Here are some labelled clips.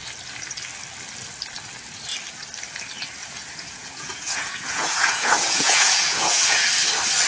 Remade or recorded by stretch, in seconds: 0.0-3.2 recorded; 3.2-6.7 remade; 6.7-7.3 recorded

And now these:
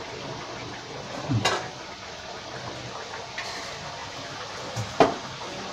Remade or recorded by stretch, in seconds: 0.0-4.0 recorded; 4.0-4.6 remade; 4.6-5.7 recorded

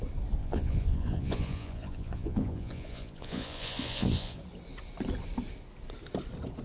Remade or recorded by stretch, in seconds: 0.0-0.4 recorded; 0.4-4.4 remade; 4.4-6.6 recorded

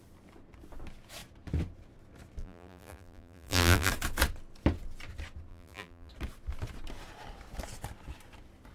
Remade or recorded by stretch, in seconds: 0.0-2.4 recorded; 2.4-3.9 remade; 3.9-5.5 recorded; 5.5-6.1 remade; 6.1-8.7 recorded

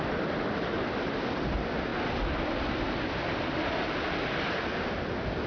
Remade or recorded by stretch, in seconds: 0.0-5.5 recorded

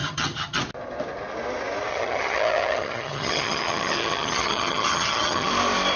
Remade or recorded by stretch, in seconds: 0.0-0.6 remade; 0.6-1.9 recorded; 1.9-5.5 remade; 5.5-6.0 recorded

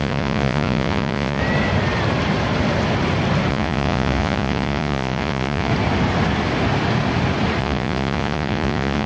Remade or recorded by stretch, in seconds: 0.0-1.4 remade; 1.4-3.5 recorded; 3.5-5.7 remade; 5.7-7.6 recorded; 7.6-9.1 remade

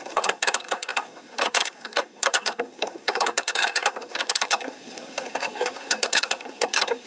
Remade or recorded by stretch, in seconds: 0.0-7.1 remade